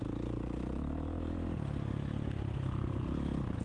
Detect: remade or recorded recorded